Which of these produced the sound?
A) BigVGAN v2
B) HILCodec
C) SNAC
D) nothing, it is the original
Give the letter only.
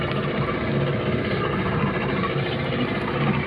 D